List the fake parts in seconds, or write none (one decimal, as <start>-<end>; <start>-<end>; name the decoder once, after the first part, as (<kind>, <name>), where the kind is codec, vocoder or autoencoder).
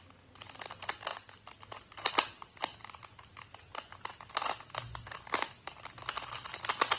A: none